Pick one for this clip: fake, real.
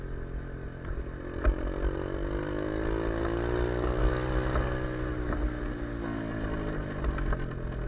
real